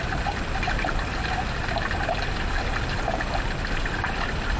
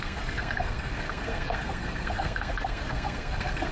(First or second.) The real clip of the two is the first